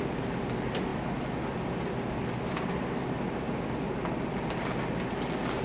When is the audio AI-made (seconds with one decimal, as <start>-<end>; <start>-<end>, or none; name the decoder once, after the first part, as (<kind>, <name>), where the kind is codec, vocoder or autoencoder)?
none